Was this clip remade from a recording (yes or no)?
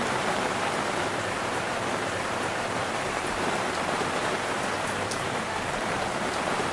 yes